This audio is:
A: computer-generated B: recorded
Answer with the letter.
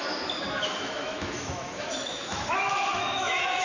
A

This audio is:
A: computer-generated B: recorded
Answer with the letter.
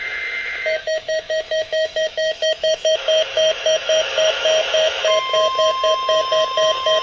A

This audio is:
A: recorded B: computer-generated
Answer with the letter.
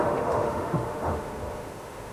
B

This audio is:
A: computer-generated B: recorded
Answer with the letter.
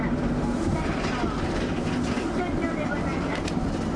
B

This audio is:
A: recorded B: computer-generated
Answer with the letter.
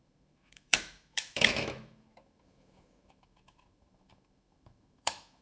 B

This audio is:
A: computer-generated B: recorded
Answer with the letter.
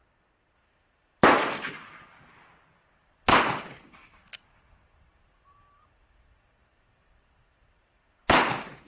B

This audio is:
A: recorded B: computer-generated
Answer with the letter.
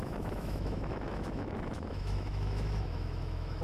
B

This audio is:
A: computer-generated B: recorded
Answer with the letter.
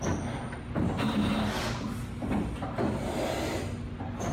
B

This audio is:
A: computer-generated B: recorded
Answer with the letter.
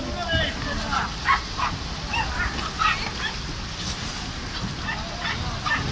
B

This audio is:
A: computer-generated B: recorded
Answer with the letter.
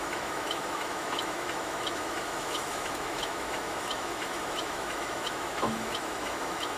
A